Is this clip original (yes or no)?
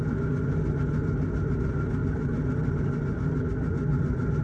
yes